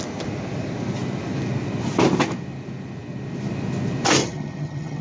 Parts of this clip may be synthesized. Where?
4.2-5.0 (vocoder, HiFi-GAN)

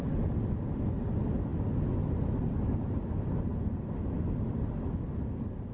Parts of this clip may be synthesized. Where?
none

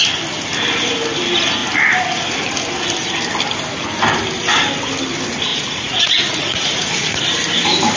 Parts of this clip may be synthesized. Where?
5.5-7.2 (vocoder, Vocos)

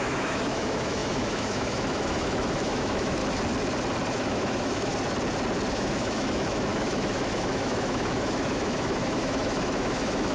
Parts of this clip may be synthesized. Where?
0.0-3.2 (autoencoder, DAC-VAE); 4.1-4.9; 5.7-10.3